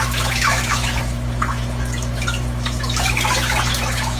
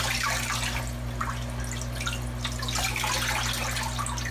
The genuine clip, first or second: second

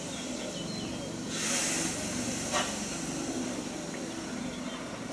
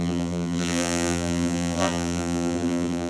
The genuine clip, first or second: first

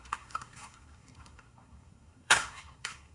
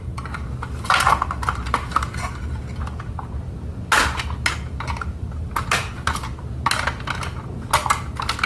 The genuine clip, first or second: second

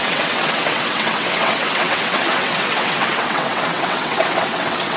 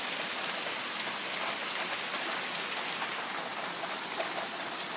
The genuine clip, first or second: second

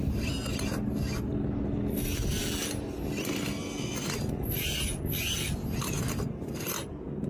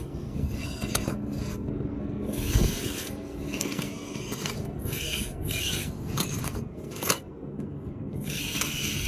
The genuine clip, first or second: first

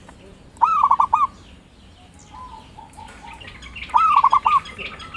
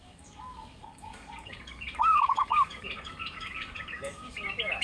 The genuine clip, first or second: first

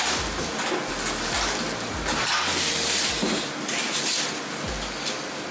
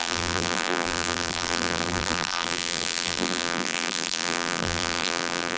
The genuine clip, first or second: first